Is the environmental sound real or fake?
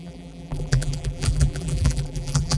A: fake